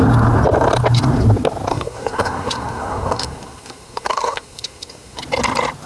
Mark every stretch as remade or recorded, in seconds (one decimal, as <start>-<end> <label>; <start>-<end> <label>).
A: 0.0-1.7 recorded; 1.7-5.2 remade; 5.2-5.9 recorded